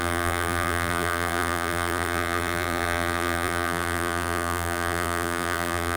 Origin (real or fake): fake